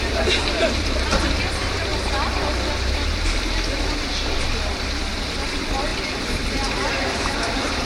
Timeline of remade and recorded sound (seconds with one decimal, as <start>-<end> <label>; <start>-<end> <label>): 0.0-1.9 remade; 1.9-3.8 recorded; 3.8-7.9 remade